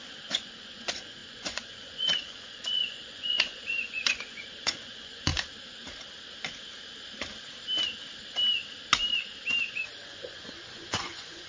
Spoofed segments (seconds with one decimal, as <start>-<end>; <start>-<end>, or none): 0.0-5.3; 9.7-11.5

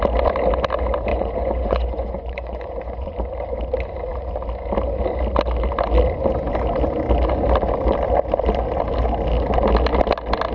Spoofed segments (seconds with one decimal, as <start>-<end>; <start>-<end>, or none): 1.1-3.1

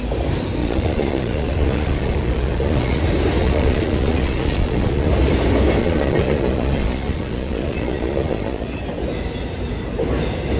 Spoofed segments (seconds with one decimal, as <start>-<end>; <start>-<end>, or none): 0.6-3.0; 3.4-5.1; 5.8-8.7

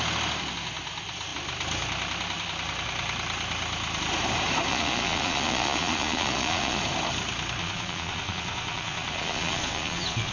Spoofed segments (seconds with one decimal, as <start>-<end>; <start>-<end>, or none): 4.7-6.8; 7.6-10.3

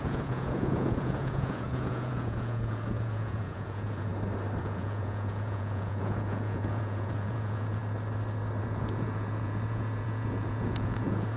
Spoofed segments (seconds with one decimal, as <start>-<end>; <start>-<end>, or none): 0.0-4.1; 4.6-7.8; 8.6-11.4

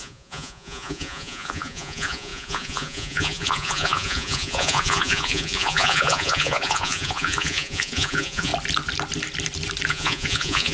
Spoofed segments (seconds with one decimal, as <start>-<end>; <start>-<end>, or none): 0.0-8.5; 9.9-10.7

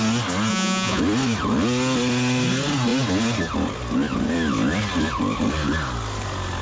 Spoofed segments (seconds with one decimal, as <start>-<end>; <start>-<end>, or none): 0.5-1.0